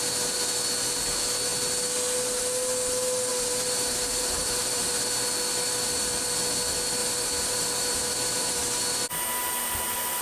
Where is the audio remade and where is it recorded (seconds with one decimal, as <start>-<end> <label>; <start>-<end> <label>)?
0.0-3.3 recorded; 3.3-5.0 remade; 5.0-7.0 recorded; 7.0-8.6 remade; 8.6-10.2 recorded